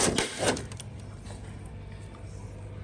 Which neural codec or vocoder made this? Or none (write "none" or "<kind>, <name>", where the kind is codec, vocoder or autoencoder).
none